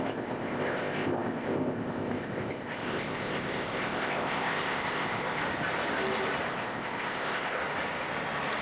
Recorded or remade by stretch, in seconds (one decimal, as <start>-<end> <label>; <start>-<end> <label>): 0.0-5.4 remade; 5.4-6.5 recorded; 6.5-7.6 remade; 7.6-8.6 recorded

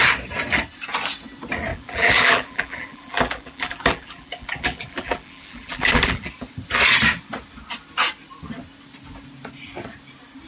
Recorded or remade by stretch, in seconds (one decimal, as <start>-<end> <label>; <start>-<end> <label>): 0.0-1.7 recorded; 1.7-6.3 remade; 6.3-10.5 recorded

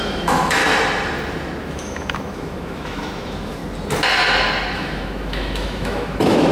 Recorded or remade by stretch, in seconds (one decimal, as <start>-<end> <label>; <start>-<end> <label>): 0.0-0.6 remade; 0.6-1.6 recorded; 1.6-3.6 remade; 3.6-4.7 recorded; 4.7-6.5 remade

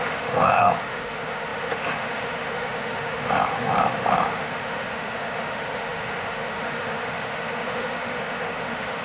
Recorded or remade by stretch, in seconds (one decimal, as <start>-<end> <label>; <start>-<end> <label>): 0.0-9.0 remade

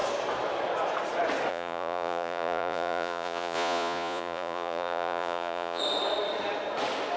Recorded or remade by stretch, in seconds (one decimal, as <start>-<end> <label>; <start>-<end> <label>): 0.0-1.5 recorded; 1.5-5.8 remade; 5.8-7.2 recorded

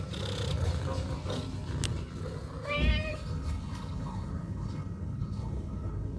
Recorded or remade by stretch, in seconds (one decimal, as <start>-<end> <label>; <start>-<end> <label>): 0.0-3.1 recorded; 3.1-6.2 remade